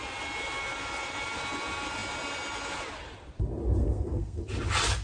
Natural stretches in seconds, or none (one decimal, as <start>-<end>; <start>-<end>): 0.0-3.8; 4.4-5.0